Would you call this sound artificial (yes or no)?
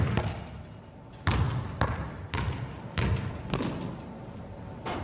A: no